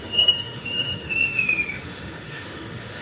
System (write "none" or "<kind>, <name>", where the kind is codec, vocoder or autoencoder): autoencoder, DAC-VAE